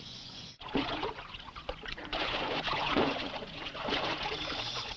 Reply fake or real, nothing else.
fake